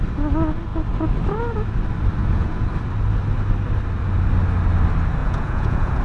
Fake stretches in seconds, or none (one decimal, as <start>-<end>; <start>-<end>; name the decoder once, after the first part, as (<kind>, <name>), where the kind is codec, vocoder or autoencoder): 2.2-2.7 (vocoder, Vocos); 5.2-6.0